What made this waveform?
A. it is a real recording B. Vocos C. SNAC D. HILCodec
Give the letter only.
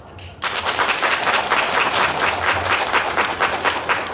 A